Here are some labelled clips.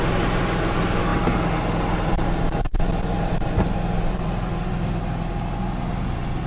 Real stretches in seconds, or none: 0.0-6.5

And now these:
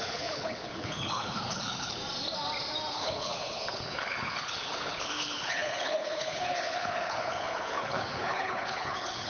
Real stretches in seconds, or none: 2.0-2.9

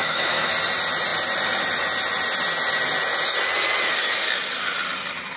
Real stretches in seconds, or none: 0.5-5.4

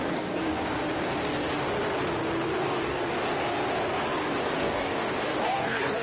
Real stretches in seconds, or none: 0.5-2.6; 3.0-4.4

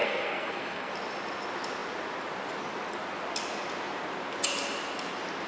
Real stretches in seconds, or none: 0.9-5.5

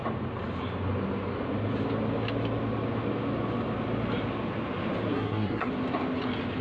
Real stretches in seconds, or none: 0.0-5.1; 5.7-6.6